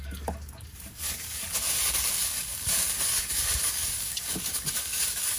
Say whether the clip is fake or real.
fake